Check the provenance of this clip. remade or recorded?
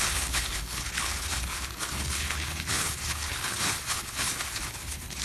remade